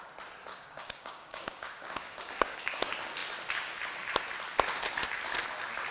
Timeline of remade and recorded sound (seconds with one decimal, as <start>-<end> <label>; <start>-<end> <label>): 0.0-0.5 recorded; 0.5-2.8 remade; 2.8-5.9 recorded